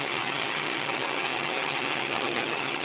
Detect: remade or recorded remade